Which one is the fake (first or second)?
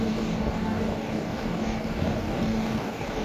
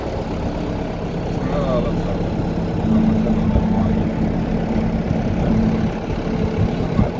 first